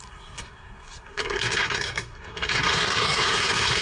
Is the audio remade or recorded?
remade